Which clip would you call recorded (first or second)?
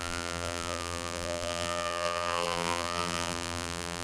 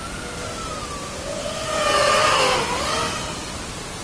second